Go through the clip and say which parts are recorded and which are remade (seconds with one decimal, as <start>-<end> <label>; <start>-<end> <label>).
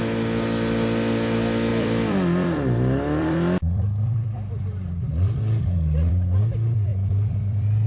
0.0-1.7 recorded; 1.7-6.1 remade; 6.1-6.9 recorded; 6.9-7.9 remade